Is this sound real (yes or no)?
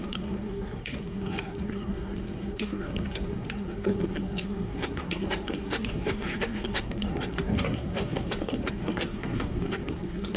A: no